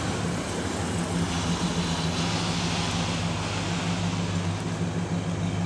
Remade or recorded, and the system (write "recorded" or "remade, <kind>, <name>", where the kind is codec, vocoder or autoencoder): recorded